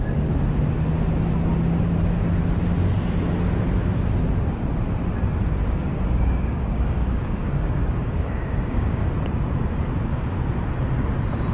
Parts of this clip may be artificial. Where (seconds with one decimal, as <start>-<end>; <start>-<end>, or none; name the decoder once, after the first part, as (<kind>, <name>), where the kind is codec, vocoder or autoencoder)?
5.6-9.0 (codec, DAC)